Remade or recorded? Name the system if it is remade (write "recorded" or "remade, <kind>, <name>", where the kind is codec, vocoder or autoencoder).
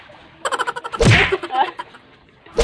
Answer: recorded